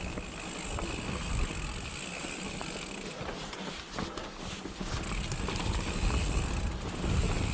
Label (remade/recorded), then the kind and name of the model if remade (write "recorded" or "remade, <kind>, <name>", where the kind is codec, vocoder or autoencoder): recorded